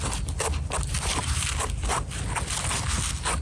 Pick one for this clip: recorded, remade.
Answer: recorded